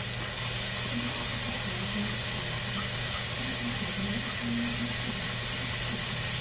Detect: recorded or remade recorded